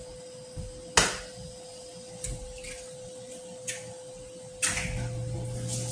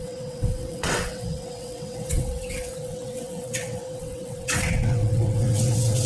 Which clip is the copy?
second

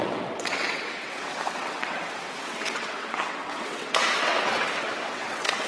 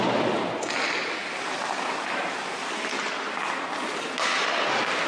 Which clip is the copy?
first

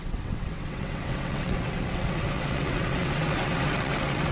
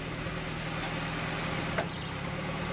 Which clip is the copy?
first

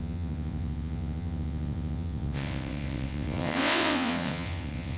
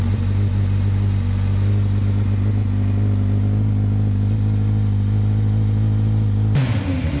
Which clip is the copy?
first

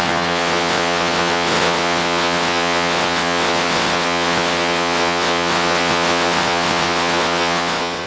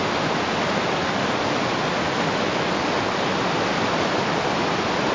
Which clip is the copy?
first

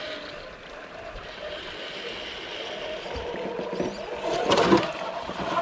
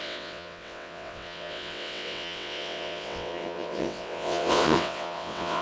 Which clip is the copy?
second